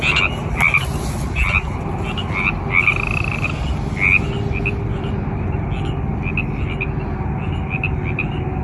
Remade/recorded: recorded